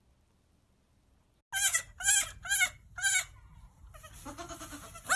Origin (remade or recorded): recorded